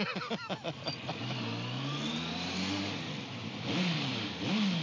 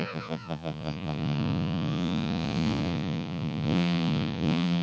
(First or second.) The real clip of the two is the first